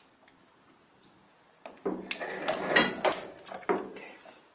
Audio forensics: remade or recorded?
recorded